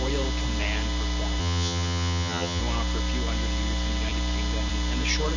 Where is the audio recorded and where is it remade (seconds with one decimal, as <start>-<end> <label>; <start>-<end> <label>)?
0.0-1.4 recorded; 1.4-2.6 remade; 2.6-5.4 recorded